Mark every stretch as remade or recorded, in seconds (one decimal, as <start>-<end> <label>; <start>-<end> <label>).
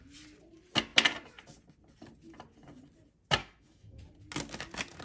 0.0-3.4 recorded; 3.4-4.0 remade; 4.0-5.0 recorded